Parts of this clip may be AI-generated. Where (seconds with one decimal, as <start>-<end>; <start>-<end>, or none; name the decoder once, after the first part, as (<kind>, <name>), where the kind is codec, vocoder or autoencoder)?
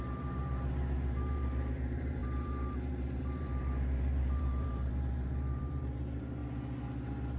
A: 0.0-6.4 (vocoder, BigVGAN v2)